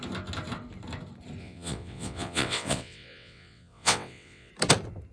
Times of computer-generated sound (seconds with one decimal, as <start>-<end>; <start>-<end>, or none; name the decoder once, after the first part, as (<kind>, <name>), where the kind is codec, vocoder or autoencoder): 1.4-4.5 (vocoder, WaveNeXt)